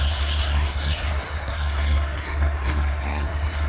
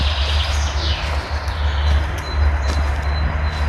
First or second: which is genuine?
second